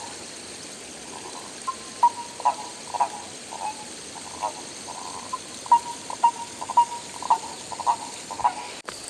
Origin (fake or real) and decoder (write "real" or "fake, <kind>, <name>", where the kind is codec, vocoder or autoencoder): real